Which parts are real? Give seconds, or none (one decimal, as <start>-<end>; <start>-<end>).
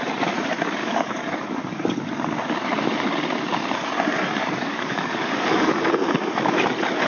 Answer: 0.0-0.8; 2.1-4.4; 5.9-7.1